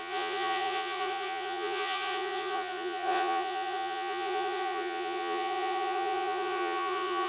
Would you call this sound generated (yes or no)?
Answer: yes